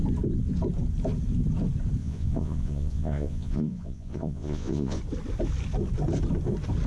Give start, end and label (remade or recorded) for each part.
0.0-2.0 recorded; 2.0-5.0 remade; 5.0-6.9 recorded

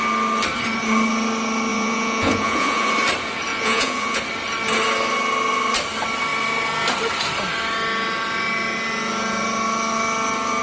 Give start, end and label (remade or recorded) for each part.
0.0-1.7 recorded; 1.7-2.9 remade; 2.9-3.5 recorded; 3.5-4.2 remade; 4.2-10.6 recorded